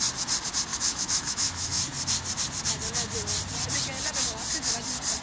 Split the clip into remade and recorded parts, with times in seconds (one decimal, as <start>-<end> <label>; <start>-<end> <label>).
0.0-0.7 recorded; 0.7-1.8 remade; 1.8-5.2 recorded

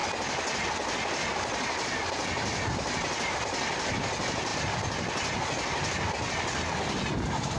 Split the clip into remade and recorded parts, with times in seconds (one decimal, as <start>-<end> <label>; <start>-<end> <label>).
0.0-7.6 recorded